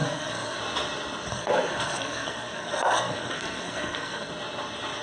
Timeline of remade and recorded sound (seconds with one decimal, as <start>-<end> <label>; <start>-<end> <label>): 0.0-0.6 remade; 0.6-1.3 recorded; 1.3-4.3 remade; 4.3-5.0 recorded